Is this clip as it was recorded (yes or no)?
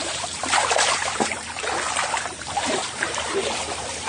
no